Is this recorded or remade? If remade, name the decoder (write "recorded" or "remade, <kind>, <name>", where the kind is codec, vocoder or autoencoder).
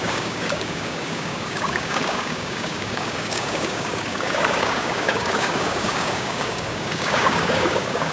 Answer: remade, codec, DAC